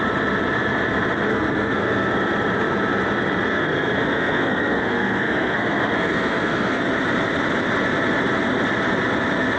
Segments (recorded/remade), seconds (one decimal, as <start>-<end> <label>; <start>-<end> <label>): 0.0-1.3 recorded; 1.3-2.1 remade; 2.1-3.5 recorded; 3.5-6.8 remade; 6.8-9.6 recorded